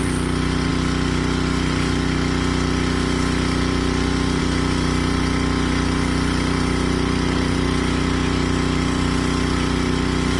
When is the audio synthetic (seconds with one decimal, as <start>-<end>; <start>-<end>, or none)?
none